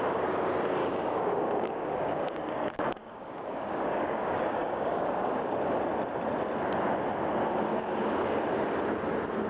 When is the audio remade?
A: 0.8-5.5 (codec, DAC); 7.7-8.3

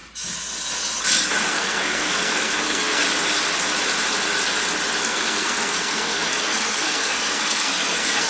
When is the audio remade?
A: 1.5-3.0 (codec, SNAC); 5.0-8.3